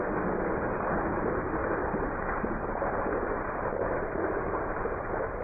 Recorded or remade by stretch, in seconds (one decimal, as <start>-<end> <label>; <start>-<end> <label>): 0.0-1.6 recorded; 1.6-4.8 remade; 4.8-5.4 recorded